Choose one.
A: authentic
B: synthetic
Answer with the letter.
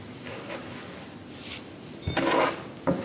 A